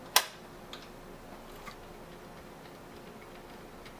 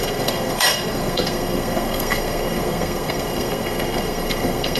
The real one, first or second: first